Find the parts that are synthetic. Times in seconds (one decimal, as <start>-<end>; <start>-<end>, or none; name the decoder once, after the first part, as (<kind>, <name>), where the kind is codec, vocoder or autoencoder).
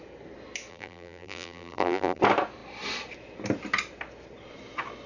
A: 0.7-2.2 (vocoder, BigVGAN v2)